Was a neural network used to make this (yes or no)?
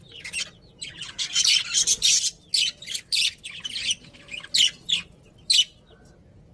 no